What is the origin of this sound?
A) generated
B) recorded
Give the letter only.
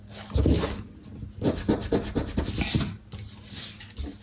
B